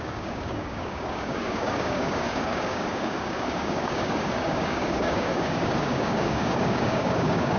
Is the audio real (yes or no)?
no